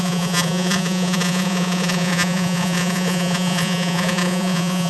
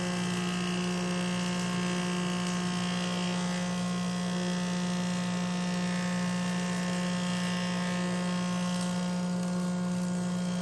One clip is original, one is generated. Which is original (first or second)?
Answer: second